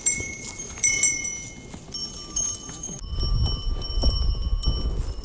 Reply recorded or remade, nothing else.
recorded